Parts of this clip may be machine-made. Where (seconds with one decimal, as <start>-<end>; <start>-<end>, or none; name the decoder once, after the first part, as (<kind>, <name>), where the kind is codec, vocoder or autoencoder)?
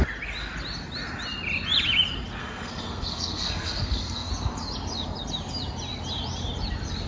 2.4-4.3 (codec, SNAC)